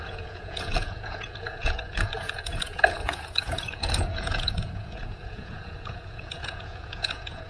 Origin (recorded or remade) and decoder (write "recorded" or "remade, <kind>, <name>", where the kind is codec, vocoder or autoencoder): remade, vocoder, Vocos